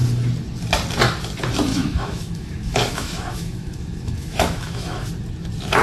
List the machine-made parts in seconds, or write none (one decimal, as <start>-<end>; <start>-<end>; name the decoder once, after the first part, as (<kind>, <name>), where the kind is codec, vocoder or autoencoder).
1.7-5.1 (autoencoder, DAC-VAE)